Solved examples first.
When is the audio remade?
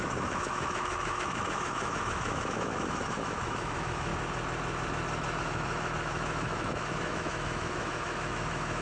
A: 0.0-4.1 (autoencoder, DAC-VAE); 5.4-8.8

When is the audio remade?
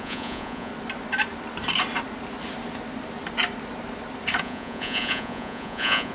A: 0.0-0.7 (vocoder, Vocos); 4.4-6.1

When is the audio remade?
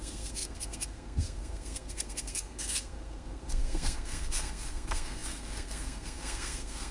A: 0.0-6.9 (codec, SNAC)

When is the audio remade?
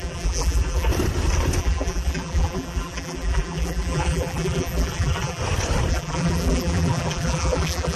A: 0.0-0.9 (vocoder, BigVGAN v2); 1.6-5.4; 5.9-8.0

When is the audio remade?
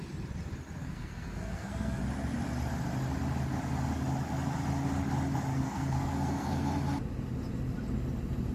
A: 0.8-2.0 (codec, SNAC); 5.5-6.7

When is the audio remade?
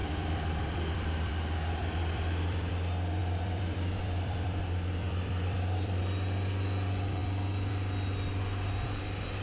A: 0.0-1.3 (vocoder, BigVGAN v2); 1.8-2.7; 3.2-6.0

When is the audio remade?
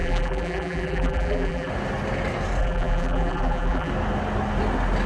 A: 0.0-1.7 (vocoder, BigVGAN v2); 2.6-3.9